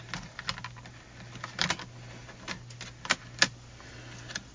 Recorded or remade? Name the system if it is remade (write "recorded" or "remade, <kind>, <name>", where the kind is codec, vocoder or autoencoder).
recorded